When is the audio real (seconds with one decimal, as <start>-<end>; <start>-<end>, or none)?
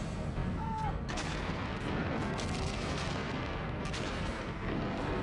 none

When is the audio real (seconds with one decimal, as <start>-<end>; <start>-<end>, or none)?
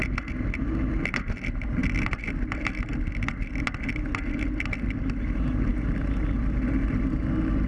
0.0-7.7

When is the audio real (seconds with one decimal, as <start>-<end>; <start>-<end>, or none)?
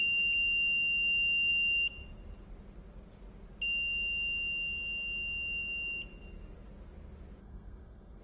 0.0-7.4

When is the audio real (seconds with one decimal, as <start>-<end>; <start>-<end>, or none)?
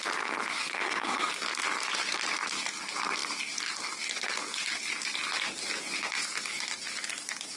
0.0-0.7; 1.3-7.6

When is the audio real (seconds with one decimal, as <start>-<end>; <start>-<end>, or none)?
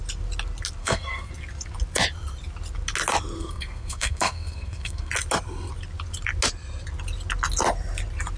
0.0-0.8; 1.3-3.4; 5.1-8.4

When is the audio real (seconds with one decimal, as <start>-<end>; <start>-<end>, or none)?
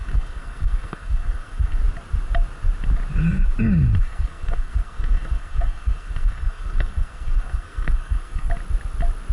1.8-4.0; 8.5-9.3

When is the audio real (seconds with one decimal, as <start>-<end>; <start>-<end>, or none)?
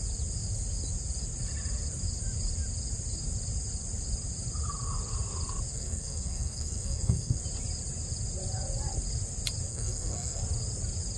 0.0-5.7; 7.4-9.7; 10.4-11.2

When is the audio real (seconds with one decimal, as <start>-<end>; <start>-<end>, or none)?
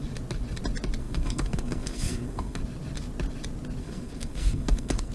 0.0-1.0; 2.6-3.8